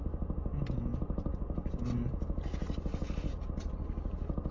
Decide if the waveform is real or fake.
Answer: real